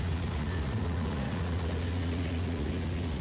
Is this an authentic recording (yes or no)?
no